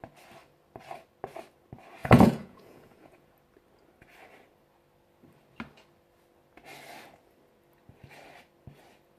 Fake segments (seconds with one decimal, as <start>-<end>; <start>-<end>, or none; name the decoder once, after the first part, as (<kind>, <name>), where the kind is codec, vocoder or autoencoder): 2.0-3.3 (vocoder, Vocos)